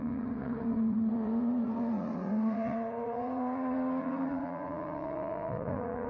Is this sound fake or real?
fake